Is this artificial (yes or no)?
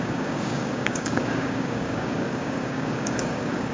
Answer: yes